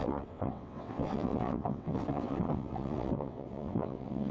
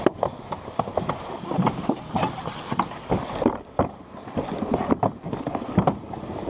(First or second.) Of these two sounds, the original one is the second